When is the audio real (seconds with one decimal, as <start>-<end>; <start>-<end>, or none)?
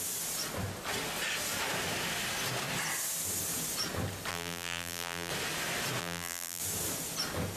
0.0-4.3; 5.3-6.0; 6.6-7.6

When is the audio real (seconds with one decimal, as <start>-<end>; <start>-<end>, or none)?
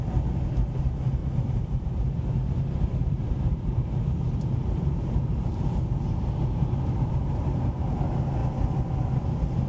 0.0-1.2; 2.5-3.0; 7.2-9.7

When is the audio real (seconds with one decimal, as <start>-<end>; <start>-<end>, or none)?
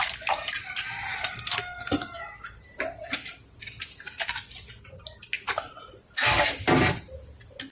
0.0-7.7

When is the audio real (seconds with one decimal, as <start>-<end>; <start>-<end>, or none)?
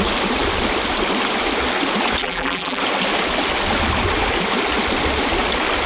0.0-2.2; 2.8-5.9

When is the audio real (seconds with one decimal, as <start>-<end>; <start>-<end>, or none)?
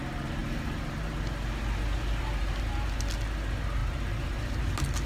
0.0-0.4; 1.0-2.4; 3.1-3.8; 4.6-5.1